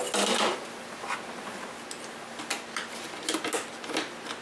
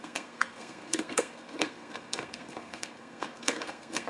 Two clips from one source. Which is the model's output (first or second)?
second